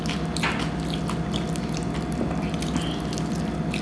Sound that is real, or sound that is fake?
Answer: real